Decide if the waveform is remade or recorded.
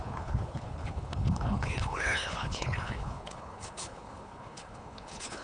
remade